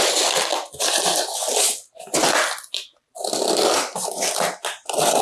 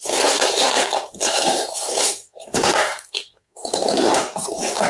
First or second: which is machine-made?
second